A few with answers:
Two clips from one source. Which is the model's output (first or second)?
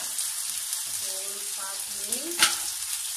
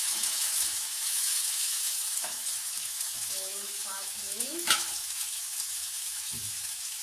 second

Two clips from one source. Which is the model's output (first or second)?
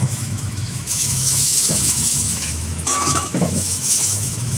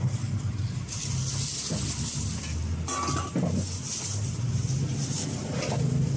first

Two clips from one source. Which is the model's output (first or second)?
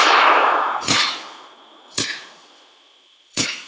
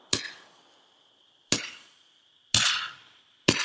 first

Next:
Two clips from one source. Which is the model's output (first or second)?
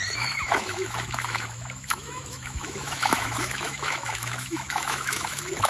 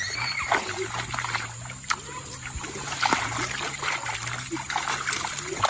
first